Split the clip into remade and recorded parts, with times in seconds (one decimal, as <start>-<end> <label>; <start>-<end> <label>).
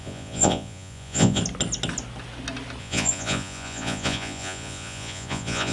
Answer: 0.0-1.4 remade; 1.4-2.8 recorded; 2.8-5.7 remade